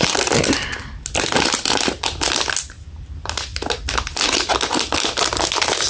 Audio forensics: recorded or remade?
recorded